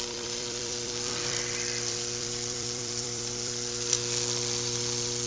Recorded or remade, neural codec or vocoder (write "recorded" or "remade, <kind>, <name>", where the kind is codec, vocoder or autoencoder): remade, vocoder, BigVGAN v2